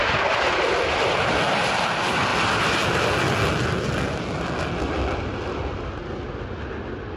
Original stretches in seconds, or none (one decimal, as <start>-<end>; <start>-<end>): 0.0-2.3; 2.8-7.2